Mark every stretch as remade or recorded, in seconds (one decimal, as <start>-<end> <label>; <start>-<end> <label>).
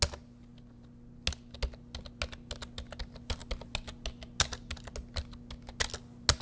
0.0-6.4 recorded